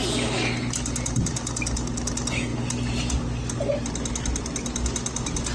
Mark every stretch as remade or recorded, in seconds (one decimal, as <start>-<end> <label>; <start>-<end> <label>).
0.0-5.5 recorded

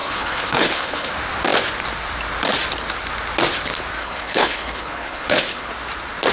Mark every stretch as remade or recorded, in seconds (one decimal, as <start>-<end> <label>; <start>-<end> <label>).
0.0-1.1 remade; 1.1-4.0 recorded; 4.0-5.7 remade; 5.7-6.3 recorded

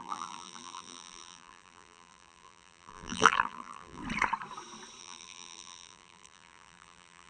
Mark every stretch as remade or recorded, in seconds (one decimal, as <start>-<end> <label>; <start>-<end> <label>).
0.0-4.0 remade; 4.0-5.0 recorded; 5.0-7.3 remade

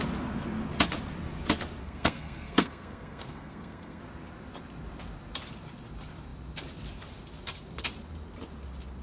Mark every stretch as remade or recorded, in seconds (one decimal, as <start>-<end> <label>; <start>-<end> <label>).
0.0-1.8 recorded; 1.8-4.0 remade; 4.0-9.0 recorded

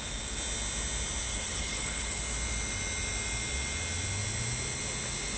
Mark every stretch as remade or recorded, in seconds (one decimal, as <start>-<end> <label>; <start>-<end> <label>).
0.0-1.3 recorded; 1.3-2.2 remade; 2.2-5.4 recorded